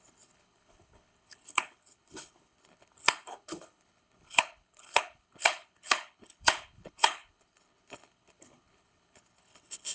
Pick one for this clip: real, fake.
fake